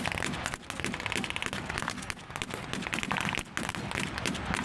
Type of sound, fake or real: real